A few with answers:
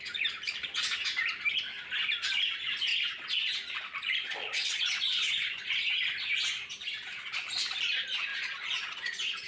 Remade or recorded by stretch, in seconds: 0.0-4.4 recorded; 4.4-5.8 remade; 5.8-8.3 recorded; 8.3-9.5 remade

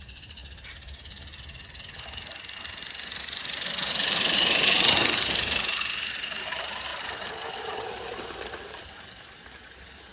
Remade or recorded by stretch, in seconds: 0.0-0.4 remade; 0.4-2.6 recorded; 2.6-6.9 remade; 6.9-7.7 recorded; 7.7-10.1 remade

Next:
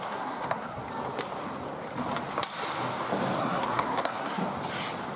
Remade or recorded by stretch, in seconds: 0.0-0.8 remade; 0.8-3.4 recorded; 3.4-4.4 remade; 4.4-5.2 recorded